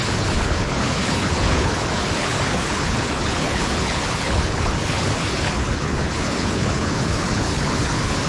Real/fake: fake